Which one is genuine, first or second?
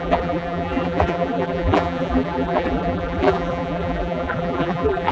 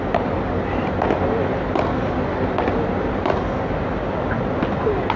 second